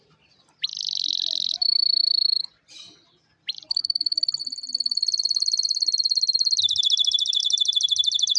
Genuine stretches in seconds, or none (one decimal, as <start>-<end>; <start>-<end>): 4.4-6.6